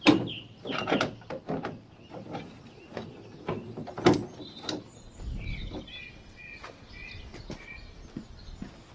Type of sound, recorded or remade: recorded